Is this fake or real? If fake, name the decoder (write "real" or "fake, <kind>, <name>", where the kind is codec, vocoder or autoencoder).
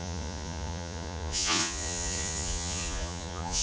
fake, vocoder, Vocos